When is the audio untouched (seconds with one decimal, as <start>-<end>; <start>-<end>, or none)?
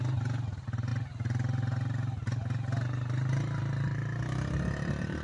0.0-5.2